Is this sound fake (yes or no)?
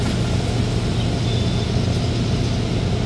no